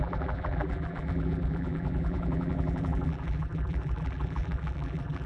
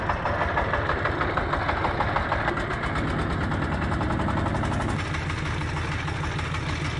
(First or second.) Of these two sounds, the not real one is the first